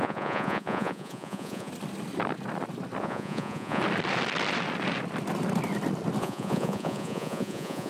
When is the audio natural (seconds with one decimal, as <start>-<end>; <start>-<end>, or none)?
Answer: 1.7-3.0; 3.8-6.2